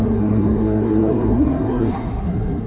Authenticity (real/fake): fake